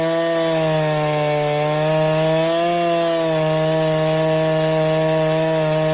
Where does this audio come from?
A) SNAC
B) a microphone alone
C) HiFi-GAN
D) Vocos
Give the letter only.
B